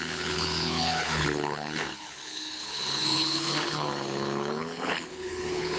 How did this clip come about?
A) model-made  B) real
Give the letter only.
A